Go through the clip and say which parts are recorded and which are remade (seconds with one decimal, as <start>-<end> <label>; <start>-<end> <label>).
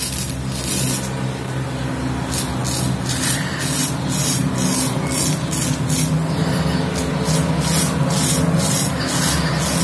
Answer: 0.0-9.8 recorded